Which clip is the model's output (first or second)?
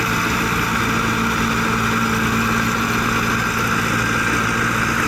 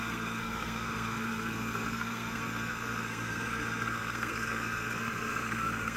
second